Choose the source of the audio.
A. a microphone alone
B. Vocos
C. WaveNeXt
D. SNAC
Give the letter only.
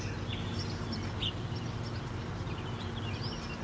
A